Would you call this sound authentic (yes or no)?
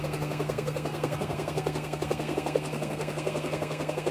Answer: no